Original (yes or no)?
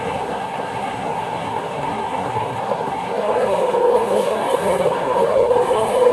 no